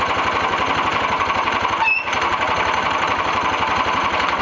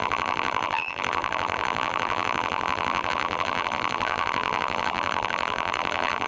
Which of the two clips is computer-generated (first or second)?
second